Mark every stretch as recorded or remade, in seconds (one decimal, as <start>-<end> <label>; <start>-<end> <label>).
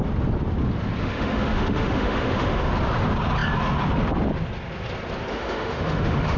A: 0.0-1.0 recorded; 1.0-2.7 remade; 2.7-5.3 recorded; 5.3-6.4 remade